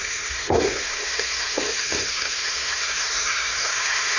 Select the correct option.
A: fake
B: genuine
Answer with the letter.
A